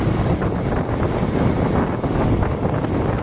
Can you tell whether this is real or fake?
real